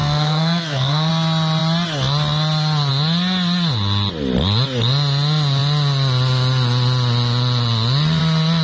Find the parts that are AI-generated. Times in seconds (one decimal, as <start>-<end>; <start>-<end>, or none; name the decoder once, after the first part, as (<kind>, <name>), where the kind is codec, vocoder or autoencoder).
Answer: 0.0-1.1 (codec, SNAC)